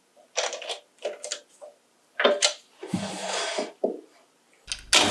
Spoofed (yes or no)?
no